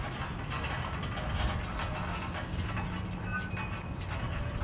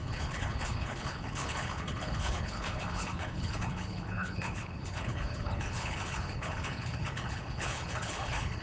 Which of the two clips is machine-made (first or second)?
second